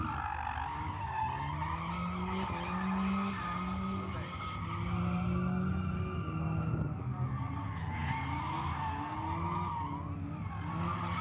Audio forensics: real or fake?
real